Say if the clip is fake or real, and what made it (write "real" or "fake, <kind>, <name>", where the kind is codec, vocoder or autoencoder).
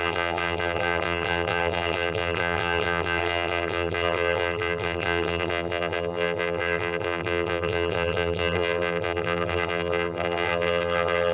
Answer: fake, vocoder, BigVGAN v2